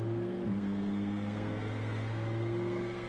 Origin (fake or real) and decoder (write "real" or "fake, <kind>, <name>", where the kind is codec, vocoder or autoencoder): fake, codec, SNAC